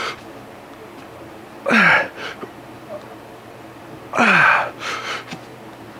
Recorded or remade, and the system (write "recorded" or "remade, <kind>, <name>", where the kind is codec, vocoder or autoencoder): remade, vocoder, BigVGAN v2